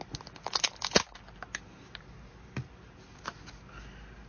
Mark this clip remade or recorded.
recorded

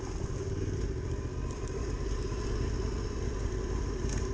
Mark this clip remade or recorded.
remade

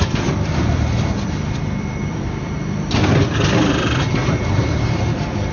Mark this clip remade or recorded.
remade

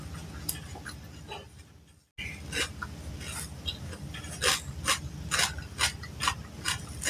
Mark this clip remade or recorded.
recorded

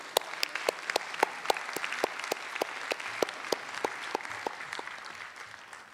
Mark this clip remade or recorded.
recorded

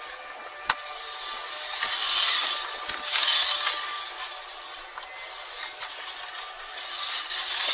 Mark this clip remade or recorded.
recorded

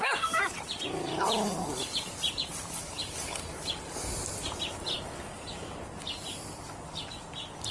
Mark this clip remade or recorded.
recorded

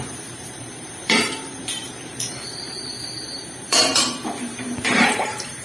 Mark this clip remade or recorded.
remade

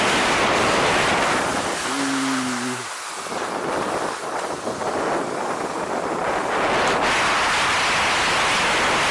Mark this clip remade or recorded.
recorded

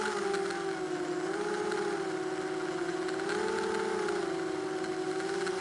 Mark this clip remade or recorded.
recorded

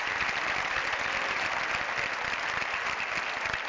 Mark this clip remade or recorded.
recorded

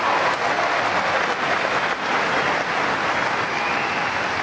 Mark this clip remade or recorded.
recorded